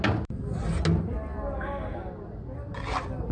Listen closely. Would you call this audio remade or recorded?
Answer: recorded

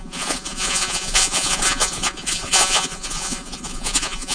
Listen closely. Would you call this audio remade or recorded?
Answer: remade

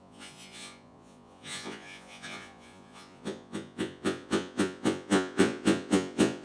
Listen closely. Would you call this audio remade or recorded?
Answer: remade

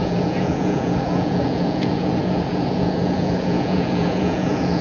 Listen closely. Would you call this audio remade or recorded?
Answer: remade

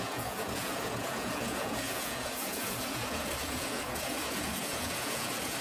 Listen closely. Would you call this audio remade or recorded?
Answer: remade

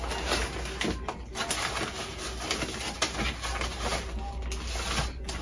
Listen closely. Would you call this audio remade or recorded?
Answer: recorded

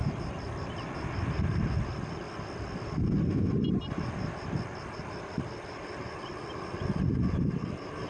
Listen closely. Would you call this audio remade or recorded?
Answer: recorded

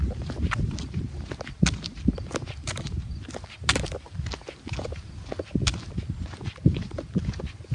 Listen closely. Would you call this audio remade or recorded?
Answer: recorded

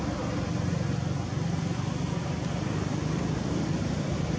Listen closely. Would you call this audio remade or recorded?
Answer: recorded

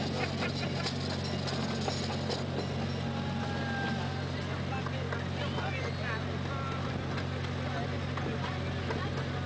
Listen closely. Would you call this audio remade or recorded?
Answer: recorded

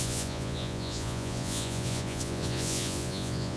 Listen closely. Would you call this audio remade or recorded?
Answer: remade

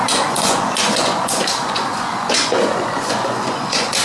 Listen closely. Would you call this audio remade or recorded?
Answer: remade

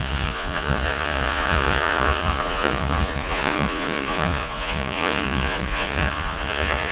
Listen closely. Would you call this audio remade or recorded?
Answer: remade